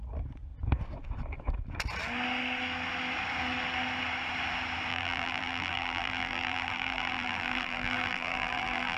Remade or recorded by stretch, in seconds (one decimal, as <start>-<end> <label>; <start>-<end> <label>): 0.0-4.9 recorded; 4.9-9.0 remade